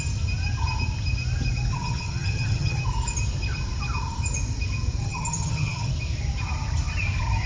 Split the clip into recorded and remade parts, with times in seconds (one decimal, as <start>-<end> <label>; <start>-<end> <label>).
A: 0.0-1.7 recorded; 1.7-2.8 remade; 2.8-5.0 recorded; 5.0-5.9 remade; 5.9-7.5 recorded